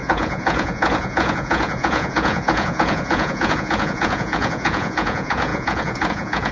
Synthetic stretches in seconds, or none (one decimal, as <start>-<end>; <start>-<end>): 0.0-6.5